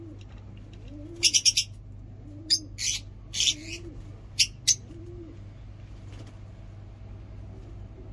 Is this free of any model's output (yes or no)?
yes